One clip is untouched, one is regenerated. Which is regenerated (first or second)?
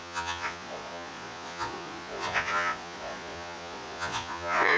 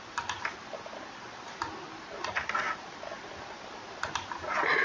first